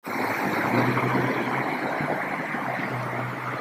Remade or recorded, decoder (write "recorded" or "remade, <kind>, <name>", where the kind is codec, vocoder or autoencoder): recorded